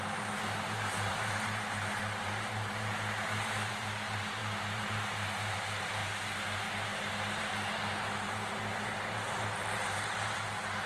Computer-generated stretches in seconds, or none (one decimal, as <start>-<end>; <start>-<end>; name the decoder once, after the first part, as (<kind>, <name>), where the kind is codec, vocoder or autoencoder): 0.0-10.9 (vocoder, BigVGAN v2)